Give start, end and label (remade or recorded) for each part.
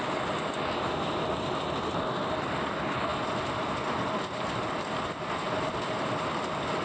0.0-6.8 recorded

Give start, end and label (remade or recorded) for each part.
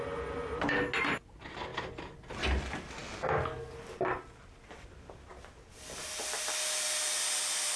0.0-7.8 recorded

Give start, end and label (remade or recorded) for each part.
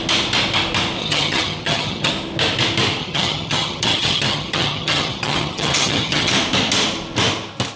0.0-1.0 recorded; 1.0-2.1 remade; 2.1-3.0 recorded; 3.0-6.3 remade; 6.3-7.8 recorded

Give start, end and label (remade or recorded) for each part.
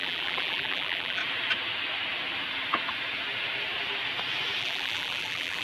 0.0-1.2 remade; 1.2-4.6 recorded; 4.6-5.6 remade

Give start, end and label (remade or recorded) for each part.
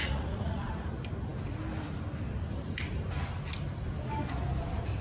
0.0-0.7 remade; 0.7-5.0 recorded